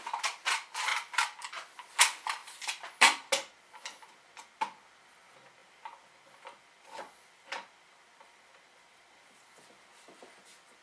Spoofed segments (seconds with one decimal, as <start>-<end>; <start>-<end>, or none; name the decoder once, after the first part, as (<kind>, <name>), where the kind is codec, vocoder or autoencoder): 0.9-1.9 (vocoder, BigVGAN v2); 2.4-3.3; 5.6-10.4